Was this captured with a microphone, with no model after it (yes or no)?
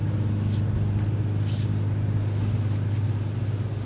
yes